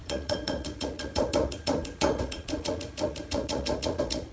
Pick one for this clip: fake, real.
fake